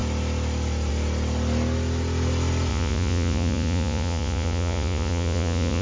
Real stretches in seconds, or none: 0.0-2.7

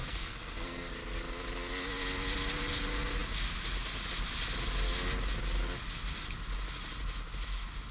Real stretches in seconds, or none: 0.9-7.9

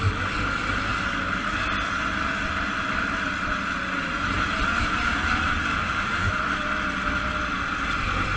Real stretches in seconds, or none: 0.0-5.7; 6.3-8.4